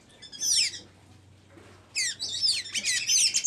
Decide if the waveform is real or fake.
real